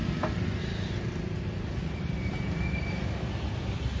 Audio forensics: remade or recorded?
recorded